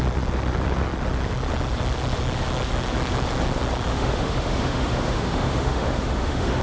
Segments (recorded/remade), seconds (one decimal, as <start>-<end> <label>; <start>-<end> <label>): 0.0-3.9 recorded; 3.9-6.6 remade

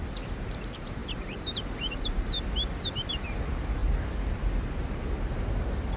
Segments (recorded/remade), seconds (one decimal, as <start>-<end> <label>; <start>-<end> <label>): 0.0-1.0 recorded; 1.0-2.4 remade; 2.4-6.0 recorded

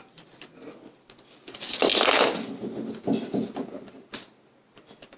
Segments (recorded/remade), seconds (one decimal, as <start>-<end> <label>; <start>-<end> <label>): 0.0-5.2 recorded